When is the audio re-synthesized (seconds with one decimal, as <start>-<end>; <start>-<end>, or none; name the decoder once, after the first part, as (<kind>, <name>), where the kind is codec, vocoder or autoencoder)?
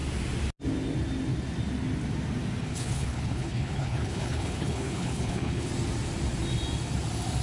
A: 2.6-5.7 (codec, HILCodec)